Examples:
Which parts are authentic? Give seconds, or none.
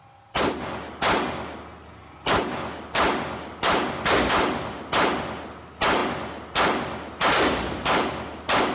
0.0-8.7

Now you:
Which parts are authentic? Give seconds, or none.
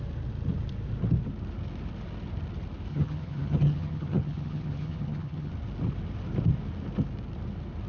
0.0-2.9; 5.5-7.9